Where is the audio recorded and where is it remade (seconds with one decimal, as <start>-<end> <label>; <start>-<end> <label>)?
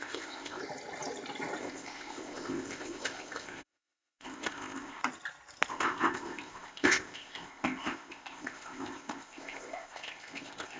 0.0-0.6 remade; 0.6-1.6 recorded; 1.6-5.0 remade; 5.0-5.7 recorded; 5.7-10.8 remade